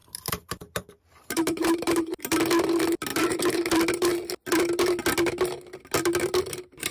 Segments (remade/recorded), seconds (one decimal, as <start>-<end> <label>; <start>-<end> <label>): 0.0-2.2 remade; 2.2-3.1 recorded; 3.1-3.7 remade; 3.7-6.9 recorded